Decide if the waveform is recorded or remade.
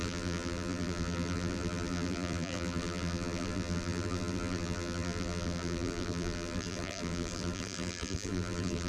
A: remade